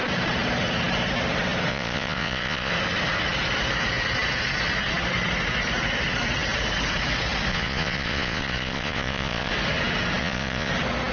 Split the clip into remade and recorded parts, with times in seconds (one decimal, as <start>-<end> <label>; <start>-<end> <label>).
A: 0.0-1.7 recorded; 1.7-2.7 remade; 2.7-7.5 recorded; 7.5-9.5 remade; 9.5-10.2 recorded; 10.2-10.7 remade; 10.7-11.1 recorded

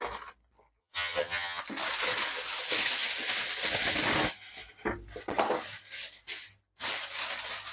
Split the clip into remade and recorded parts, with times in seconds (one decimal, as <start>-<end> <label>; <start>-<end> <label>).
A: 0.0-0.8 recorded; 0.8-1.6 remade; 1.6-7.7 recorded

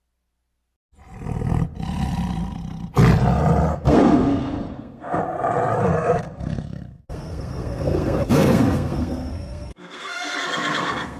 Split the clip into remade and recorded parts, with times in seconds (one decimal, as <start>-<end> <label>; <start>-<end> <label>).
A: 0.0-3.7 recorded; 3.7-5.2 remade; 5.2-5.8 recorded; 5.8-11.2 remade